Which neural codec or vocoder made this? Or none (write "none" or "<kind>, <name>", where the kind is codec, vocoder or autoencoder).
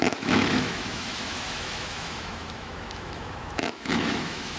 autoencoder, DAC-VAE